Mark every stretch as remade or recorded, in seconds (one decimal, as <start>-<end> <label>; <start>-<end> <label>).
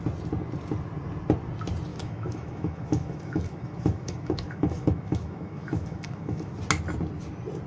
0.0-1.9 recorded; 1.9-6.5 remade; 6.5-7.7 recorded